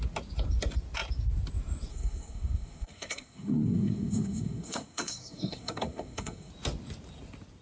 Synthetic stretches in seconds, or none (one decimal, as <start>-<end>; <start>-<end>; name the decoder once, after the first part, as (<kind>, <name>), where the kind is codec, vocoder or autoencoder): 1.9-6.5 (codec, SNAC)

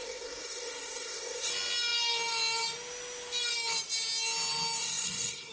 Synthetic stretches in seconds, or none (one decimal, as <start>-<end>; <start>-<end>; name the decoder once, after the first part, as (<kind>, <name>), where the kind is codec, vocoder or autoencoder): 0.0-1.5 (codec, SNAC); 4.8-5.5

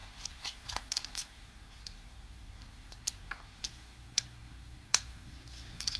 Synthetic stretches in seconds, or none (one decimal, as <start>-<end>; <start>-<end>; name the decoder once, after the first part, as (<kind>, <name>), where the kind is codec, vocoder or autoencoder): 0.0-6.0 (codec, SNAC)

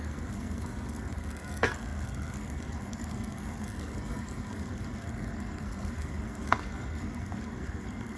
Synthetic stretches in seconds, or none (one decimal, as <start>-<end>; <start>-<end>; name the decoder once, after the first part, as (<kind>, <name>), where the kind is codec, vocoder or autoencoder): 0.0-8.2 (codec, SNAC)

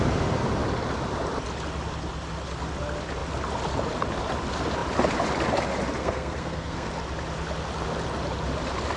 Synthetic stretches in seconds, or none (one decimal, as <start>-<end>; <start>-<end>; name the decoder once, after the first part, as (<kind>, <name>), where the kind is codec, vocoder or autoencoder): 6.0-6.9 (codec, SNAC)